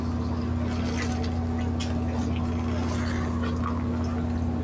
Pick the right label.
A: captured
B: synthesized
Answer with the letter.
A